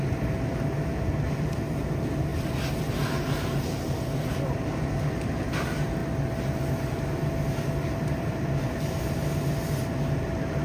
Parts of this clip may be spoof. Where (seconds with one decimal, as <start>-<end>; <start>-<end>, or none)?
0.0-6.0; 6.9-10.6